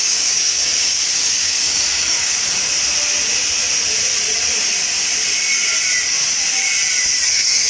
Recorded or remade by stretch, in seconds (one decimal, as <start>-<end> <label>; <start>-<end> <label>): 0.0-2.7 remade; 2.7-7.3 recorded; 7.3-7.7 remade